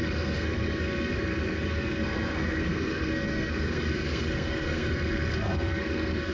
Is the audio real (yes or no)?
no